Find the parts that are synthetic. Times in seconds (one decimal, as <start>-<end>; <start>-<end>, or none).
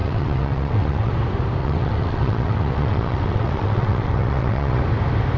0.0-1.1; 1.6-4.8